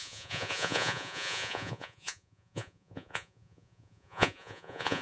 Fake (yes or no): yes